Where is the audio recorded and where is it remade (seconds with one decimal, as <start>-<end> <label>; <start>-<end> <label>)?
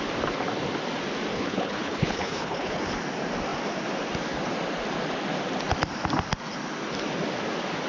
0.0-1.3 recorded; 1.3-2.8 remade; 2.8-7.9 recorded